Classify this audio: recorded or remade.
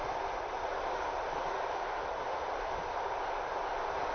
recorded